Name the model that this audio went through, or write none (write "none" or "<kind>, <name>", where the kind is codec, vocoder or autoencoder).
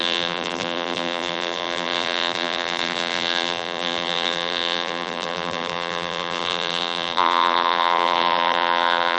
vocoder, BigVGAN v2